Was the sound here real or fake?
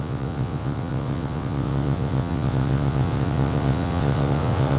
fake